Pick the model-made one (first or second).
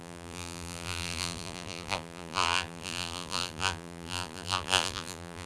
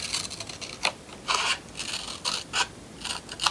first